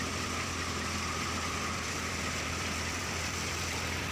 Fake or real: fake